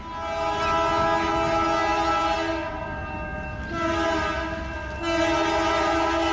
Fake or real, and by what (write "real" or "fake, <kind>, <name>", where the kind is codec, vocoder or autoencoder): real